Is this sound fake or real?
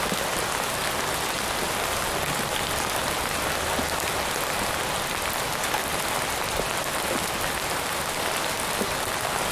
real